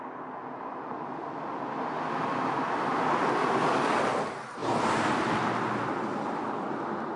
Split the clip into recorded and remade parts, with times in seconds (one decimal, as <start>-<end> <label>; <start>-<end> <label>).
0.0-7.2 recorded